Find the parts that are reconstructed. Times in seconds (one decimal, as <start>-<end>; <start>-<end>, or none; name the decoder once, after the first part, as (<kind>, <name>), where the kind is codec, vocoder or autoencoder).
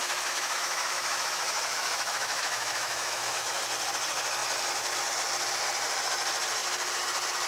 0.0-3.6 (autoencoder, DAC-VAE)